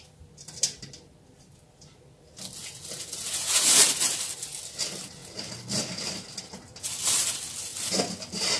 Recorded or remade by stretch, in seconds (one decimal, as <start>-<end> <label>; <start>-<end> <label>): 0.0-2.6 recorded; 2.6-3.8 remade; 3.8-8.6 recorded